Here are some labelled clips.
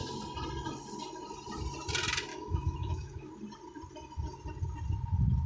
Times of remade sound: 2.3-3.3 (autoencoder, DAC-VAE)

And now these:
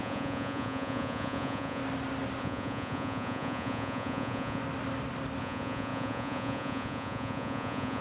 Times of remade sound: 0.0-1.8 (vocoder, Vocos); 2.4-4.6; 5.4-8.0

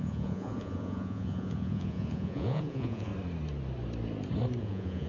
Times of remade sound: 0.0-3.1 (vocoder, Vocos); 4.6-5.1

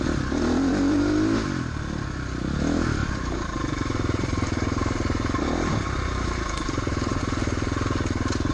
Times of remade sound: 3.0-7.2 (vocoder, BigVGAN v2)

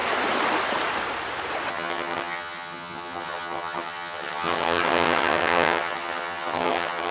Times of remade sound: 1.7-7.1 (vocoder, HiFi-GAN)